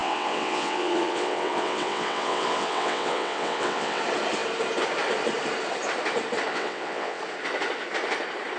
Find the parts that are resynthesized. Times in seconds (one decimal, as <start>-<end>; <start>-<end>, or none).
0.0-4.0; 6.5-7.2